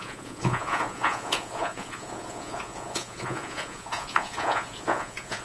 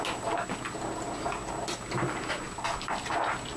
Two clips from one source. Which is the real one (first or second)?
second